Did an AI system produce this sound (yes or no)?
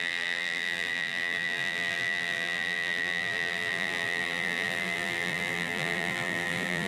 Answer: yes